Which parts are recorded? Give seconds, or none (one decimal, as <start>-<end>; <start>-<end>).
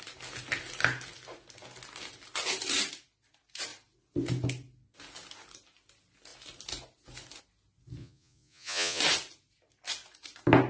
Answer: 0.0-8.0; 9.0-10.7